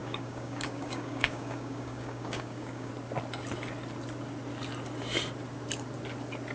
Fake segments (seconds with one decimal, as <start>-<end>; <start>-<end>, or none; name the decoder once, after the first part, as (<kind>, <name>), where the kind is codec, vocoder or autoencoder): 0.0-2.9 (codec, DAC)